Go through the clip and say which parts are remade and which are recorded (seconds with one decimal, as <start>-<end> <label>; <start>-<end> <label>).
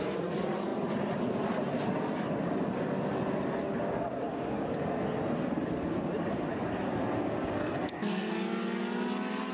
0.0-7.6 recorded; 7.6-8.3 remade; 8.3-9.5 recorded